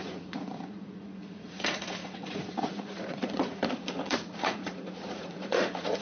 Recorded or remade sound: remade